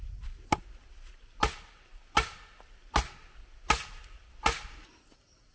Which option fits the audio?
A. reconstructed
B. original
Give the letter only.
B